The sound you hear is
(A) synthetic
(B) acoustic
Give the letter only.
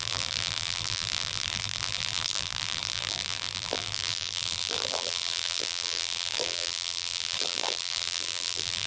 A